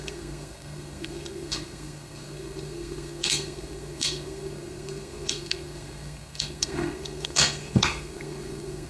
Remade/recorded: remade